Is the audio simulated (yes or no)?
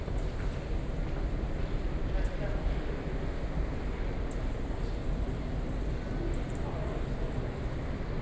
no